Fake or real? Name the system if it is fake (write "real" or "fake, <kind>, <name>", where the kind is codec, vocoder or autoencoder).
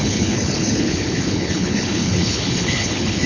fake, codec, HILCodec